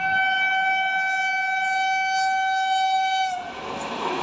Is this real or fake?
real